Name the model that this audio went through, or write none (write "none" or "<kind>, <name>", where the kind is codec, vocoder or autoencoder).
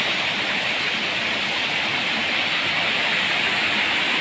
none